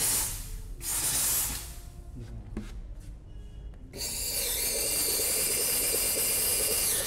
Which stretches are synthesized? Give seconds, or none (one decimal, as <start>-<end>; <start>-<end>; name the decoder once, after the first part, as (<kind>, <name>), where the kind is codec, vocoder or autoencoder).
6.5-7.1 (vocoder, Vocos)